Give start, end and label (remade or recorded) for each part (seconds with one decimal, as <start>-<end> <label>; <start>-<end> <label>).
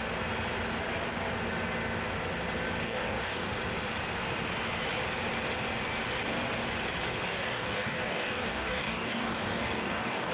0.0-2.8 recorded; 2.8-3.5 remade; 3.5-7.3 recorded; 7.3-10.3 remade